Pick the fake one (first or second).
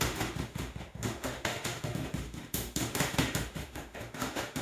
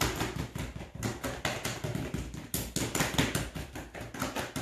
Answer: first